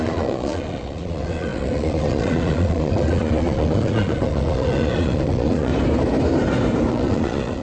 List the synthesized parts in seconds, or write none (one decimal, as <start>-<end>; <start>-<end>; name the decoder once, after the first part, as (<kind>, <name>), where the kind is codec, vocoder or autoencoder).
0.0-5.7 (vocoder, Vocos); 6.9-7.6